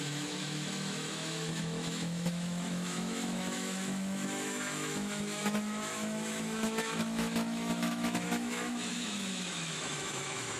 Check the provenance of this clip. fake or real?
fake